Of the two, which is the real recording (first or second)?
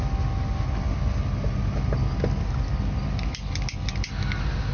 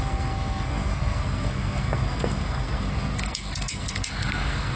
first